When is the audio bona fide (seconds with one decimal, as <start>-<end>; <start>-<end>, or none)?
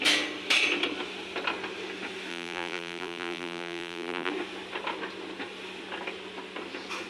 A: 0.0-2.3; 4.3-7.1